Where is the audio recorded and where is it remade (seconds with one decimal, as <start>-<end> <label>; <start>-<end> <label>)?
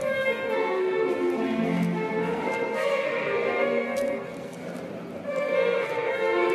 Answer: 0.0-4.6 remade; 4.6-5.3 recorded; 5.3-6.5 remade